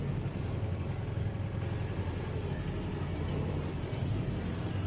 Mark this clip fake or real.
real